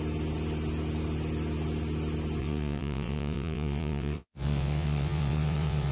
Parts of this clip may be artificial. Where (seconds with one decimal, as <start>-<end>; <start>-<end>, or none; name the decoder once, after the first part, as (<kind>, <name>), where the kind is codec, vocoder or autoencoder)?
2.4-5.9 (vocoder, WaveNeXt)